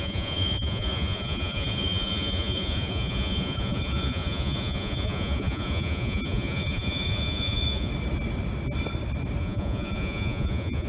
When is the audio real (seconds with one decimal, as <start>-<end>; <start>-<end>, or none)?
7.9-9.4